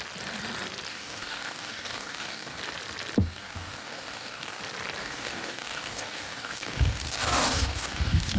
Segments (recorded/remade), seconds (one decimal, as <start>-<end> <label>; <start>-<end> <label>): 0.0-0.9 recorded; 0.9-2.6 remade; 2.6-3.2 recorded; 3.2-4.6 remade; 4.6-5.0 recorded; 5.0-8.4 remade